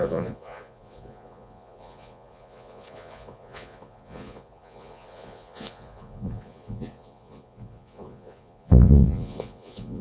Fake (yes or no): yes